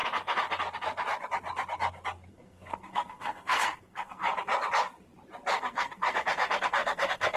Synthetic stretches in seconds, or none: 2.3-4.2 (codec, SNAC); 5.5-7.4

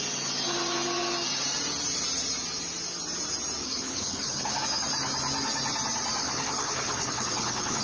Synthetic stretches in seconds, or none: 3.6-4.6 (codec, HILCodec); 6.2-7.8